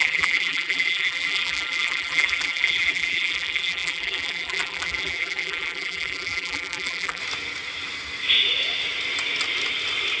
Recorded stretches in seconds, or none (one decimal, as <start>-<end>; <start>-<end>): 7.2-10.2